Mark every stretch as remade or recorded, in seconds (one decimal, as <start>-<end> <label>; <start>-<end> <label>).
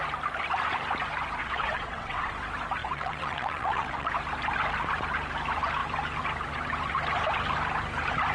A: 0.0-1.4 recorded; 1.4-2.3 remade; 2.3-2.8 recorded; 2.8-4.1 remade; 4.1-8.3 recorded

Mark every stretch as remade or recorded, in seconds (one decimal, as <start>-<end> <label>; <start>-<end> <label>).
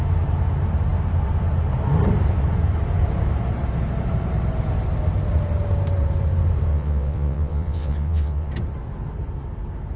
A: 0.0-6.7 recorded; 6.7-8.5 remade; 8.5-10.0 recorded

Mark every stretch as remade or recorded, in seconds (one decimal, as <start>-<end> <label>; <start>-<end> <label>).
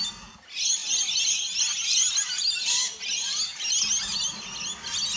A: 0.0-5.2 recorded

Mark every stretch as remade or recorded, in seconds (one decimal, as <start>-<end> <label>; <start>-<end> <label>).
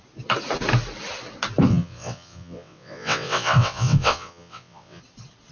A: 0.0-1.7 recorded; 1.7-5.0 remade; 5.0-5.5 recorded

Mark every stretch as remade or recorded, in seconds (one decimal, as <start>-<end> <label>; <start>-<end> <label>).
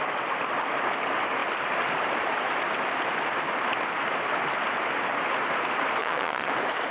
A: 0.0-6.0 recorded; 6.0-6.5 remade; 6.5-6.9 recorded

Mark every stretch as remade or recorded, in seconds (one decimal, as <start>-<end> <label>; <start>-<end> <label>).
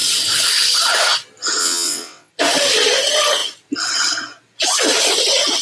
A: 0.0-1.6 recorded; 1.6-2.3 remade; 2.3-5.6 recorded